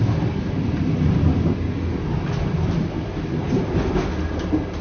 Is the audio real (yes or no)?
yes